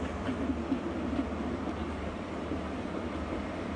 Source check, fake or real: real